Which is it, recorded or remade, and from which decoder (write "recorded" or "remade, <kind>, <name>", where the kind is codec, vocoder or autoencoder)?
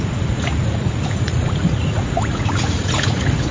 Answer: remade, vocoder, Vocos